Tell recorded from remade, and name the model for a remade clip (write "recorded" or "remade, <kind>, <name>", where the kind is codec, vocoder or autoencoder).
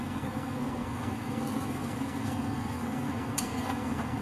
remade, codec, SNAC